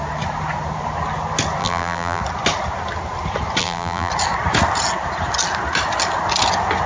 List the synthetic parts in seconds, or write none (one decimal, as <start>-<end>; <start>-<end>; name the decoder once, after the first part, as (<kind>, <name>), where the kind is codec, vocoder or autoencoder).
1.6-2.2 (vocoder, BigVGAN v2); 3.6-4.1

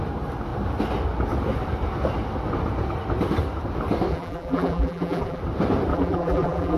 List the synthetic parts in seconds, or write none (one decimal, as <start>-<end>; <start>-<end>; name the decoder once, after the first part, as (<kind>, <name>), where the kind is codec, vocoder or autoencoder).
4.1-5.4 (vocoder, BigVGAN v2); 5.9-6.8

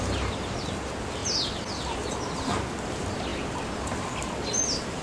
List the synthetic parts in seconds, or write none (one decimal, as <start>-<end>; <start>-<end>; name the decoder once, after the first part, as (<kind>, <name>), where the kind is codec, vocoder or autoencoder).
none

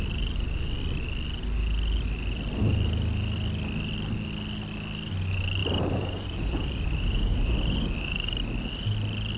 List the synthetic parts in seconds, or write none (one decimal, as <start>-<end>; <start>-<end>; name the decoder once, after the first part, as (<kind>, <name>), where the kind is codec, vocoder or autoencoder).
5.6-7.9 (vocoder, BigVGAN v2)

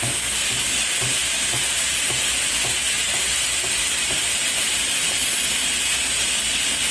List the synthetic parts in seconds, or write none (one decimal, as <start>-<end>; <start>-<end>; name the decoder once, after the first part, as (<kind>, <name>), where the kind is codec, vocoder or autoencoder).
1.2-5.3 (vocoder, BigVGAN v2)

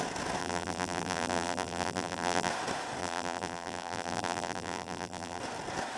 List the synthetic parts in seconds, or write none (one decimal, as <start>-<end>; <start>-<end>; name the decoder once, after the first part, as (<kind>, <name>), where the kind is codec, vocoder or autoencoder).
0.4-2.5 (vocoder, BigVGAN v2); 3.0-5.4

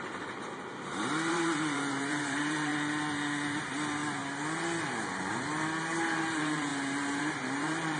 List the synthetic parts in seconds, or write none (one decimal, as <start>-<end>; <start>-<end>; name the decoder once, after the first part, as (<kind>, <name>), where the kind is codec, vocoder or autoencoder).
0.0-2.7 (vocoder, BigVGAN v2); 3.6-4.0; 6.2-6.7; 7.2-8.0

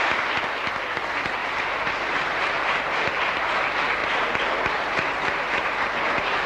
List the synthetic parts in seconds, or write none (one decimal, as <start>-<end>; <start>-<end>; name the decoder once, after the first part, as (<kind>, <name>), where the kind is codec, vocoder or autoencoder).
1.4-2.8 (vocoder, BigVGAN v2); 4.0-6.5